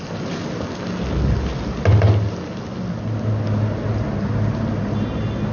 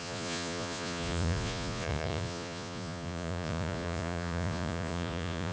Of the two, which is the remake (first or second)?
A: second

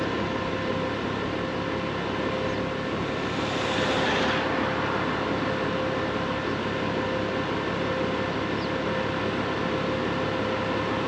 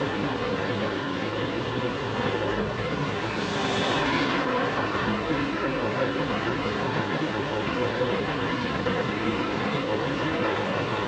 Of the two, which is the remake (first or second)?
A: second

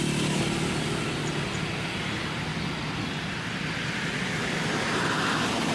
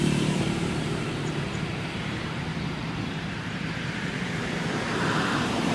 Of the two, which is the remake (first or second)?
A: second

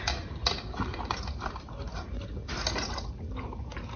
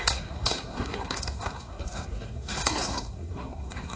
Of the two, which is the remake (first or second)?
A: second